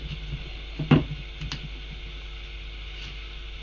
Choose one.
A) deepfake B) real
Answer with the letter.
B